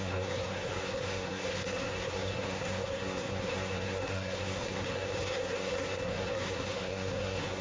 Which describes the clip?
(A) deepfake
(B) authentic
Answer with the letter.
A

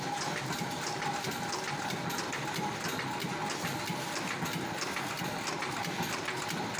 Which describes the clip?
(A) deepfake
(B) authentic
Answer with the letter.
B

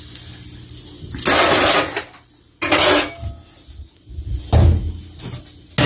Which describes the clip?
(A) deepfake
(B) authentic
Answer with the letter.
B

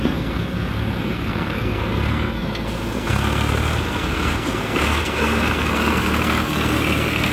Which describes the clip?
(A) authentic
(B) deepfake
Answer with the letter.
B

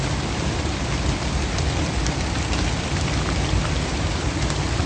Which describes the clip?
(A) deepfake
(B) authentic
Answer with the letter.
B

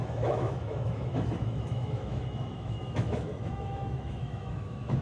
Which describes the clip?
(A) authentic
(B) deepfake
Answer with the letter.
B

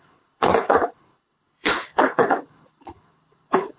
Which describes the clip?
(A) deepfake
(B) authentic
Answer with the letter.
A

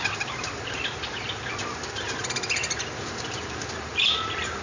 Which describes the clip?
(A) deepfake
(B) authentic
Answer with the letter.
B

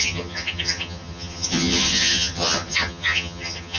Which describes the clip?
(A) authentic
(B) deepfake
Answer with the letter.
B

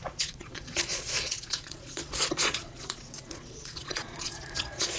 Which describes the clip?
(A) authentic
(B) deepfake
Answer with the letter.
B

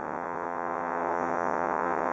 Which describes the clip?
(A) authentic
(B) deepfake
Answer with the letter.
B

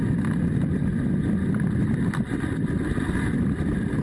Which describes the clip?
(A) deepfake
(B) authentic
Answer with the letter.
B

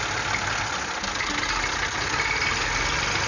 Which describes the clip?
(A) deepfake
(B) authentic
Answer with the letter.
B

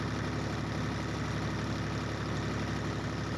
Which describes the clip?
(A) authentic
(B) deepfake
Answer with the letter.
A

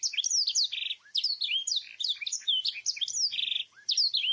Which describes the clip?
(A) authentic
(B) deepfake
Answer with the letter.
A